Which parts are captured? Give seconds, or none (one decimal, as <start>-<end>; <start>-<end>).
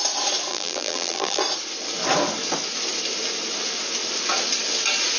0.0-0.5; 1.4-5.2